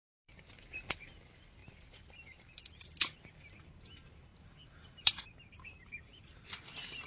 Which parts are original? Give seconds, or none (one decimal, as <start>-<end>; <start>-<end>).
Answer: 1.1-1.6; 2.6-4.3; 5.2-6.1